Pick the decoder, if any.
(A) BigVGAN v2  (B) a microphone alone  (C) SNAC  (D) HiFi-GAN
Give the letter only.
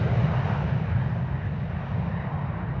B